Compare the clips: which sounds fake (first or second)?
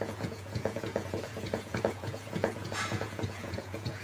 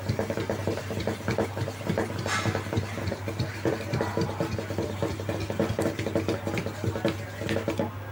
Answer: first